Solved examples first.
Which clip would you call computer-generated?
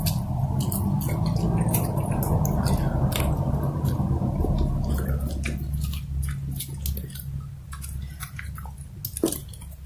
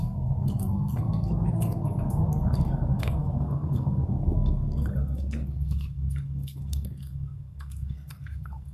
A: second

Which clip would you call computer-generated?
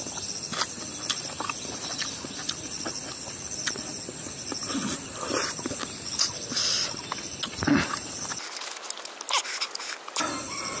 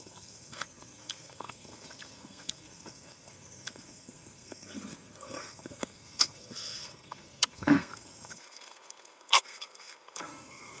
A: second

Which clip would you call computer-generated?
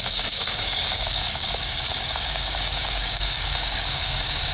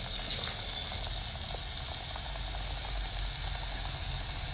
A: first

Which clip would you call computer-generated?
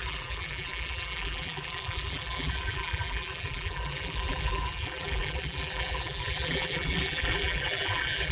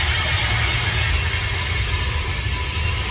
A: first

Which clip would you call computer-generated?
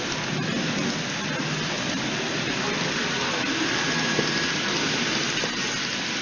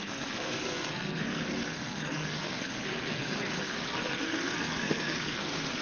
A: second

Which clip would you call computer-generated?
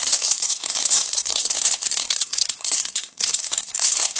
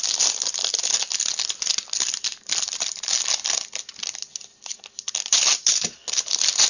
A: first